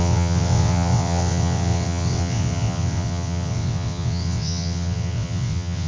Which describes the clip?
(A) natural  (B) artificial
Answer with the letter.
B